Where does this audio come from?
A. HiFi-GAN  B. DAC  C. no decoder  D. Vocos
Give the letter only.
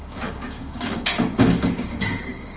B